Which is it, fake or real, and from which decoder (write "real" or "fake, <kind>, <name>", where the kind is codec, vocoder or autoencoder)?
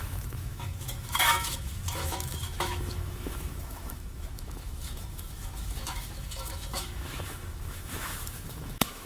fake, autoencoder, DAC-VAE